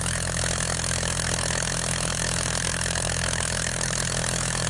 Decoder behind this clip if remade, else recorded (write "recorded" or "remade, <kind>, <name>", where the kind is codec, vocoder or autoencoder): remade, autoencoder, DAC-VAE